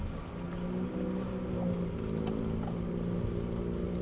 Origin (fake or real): real